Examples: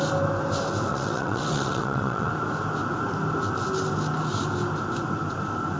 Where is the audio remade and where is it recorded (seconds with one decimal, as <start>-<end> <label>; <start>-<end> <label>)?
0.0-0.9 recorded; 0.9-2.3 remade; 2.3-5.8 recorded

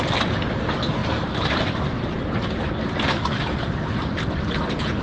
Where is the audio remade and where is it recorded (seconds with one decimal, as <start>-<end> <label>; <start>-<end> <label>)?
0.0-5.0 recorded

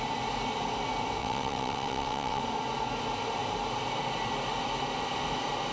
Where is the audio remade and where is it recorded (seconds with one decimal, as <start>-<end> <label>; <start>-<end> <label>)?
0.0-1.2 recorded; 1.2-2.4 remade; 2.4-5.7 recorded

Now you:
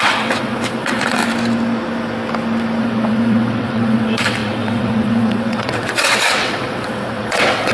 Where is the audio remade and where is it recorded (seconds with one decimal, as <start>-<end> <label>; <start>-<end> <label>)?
0.0-1.2 remade; 1.2-2.8 recorded; 2.8-7.7 remade

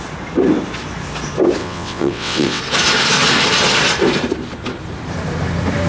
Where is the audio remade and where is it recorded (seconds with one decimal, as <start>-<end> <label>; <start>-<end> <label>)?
0.0-1.6 recorded; 1.6-2.6 remade; 2.6-5.9 recorded